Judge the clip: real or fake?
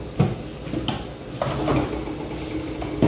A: real